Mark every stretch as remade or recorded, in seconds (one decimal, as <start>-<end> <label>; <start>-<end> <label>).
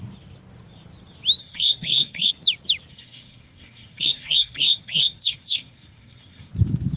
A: 0.0-1.4 recorded; 1.4-2.3 remade; 2.3-2.9 recorded; 2.9-6.5 remade; 6.5-7.0 recorded